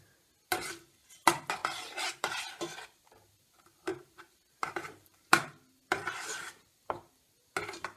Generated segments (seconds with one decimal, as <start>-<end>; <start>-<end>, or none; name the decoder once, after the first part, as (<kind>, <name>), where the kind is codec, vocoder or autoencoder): 1.6-2.4 (vocoder, BigVGAN v2); 3.9-6.8